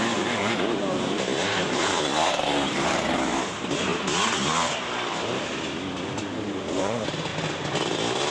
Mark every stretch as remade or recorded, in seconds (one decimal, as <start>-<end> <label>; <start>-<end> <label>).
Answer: 0.0-3.9 remade; 3.9-6.8 recorded; 6.8-7.3 remade; 7.3-8.3 recorded